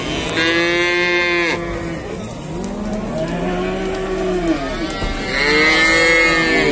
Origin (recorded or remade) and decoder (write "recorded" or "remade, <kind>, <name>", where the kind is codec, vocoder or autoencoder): recorded